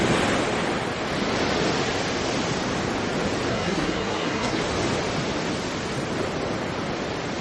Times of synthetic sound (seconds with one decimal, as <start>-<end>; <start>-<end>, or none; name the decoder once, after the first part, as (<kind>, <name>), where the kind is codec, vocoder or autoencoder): 3.5-4.6 (codec, SNAC)